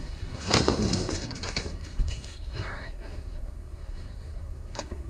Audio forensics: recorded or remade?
remade